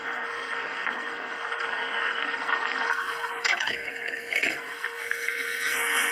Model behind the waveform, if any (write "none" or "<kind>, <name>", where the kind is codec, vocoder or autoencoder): codec, SNAC